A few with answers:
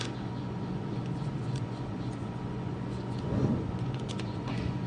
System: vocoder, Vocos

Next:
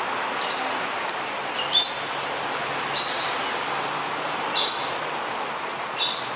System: none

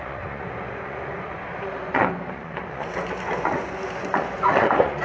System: vocoder, Vocos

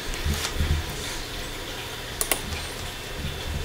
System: none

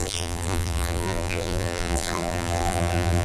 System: vocoder, BigVGAN v2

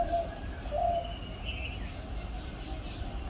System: none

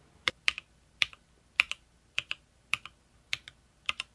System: none